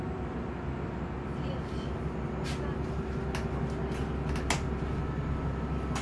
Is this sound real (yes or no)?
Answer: yes